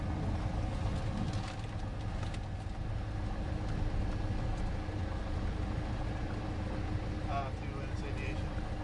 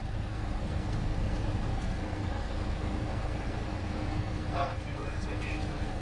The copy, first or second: second